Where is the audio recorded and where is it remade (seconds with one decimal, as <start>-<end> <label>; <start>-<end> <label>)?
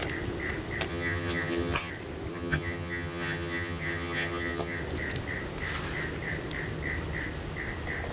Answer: 0.0-0.9 recorded; 0.9-1.9 remade; 1.9-2.3 recorded; 2.3-4.8 remade; 4.8-8.1 recorded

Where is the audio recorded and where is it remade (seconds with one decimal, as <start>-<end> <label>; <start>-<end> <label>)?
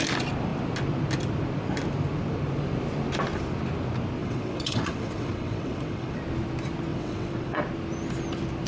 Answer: 0.0-4.2 recorded; 4.2-6.2 remade; 6.2-6.9 recorded; 6.9-7.6 remade; 7.6-8.7 recorded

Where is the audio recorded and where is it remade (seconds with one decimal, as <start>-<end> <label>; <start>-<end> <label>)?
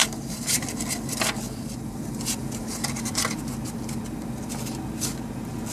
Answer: 0.0-1.3 remade; 1.3-2.6 recorded; 2.6-4.0 remade; 4.0-5.7 recorded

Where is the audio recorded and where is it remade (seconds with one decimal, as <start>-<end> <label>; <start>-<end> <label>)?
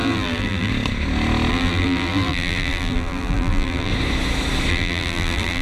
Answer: 0.0-0.7 remade; 0.7-1.5 recorded; 1.5-3.9 remade; 3.9-4.7 recorded; 4.7-5.6 remade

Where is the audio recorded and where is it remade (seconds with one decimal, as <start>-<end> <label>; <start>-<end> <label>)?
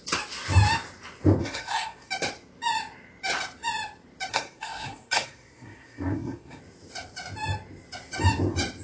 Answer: 0.0-1.4 recorded; 1.4-2.1 remade; 2.1-4.3 recorded; 4.3-6.6 remade; 6.6-8.8 recorded